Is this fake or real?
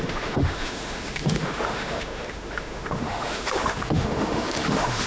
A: fake